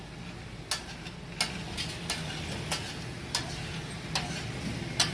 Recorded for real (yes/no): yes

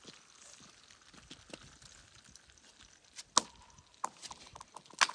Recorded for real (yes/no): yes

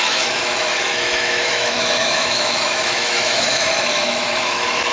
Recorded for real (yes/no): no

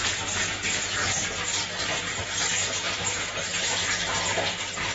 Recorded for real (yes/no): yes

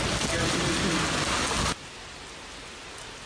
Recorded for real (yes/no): yes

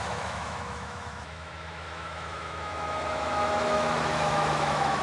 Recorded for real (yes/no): no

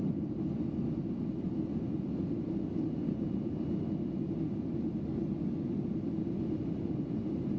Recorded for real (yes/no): yes